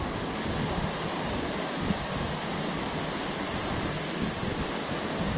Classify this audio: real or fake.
real